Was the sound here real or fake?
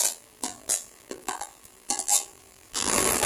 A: fake